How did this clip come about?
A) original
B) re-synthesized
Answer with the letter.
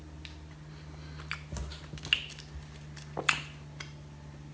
A